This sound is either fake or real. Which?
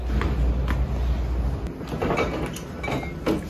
real